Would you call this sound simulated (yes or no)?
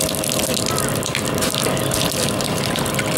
no